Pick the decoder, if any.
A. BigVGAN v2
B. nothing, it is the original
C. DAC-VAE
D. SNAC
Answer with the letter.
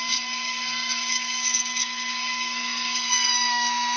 D